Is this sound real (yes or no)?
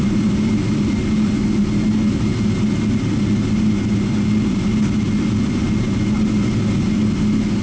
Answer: yes